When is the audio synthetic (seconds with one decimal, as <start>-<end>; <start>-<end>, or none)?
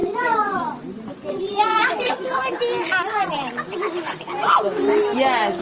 0.0-0.8; 1.3-2.2